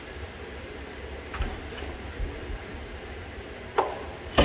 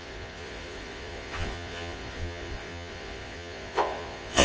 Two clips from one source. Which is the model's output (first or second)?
second